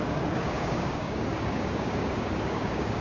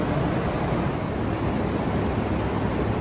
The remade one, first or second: first